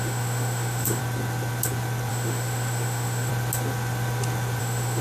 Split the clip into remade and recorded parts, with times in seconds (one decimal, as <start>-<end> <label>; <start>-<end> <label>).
0.0-1.0 remade; 1.0-2.1 recorded; 2.1-3.3 remade; 3.3-4.6 recorded; 4.6-5.0 remade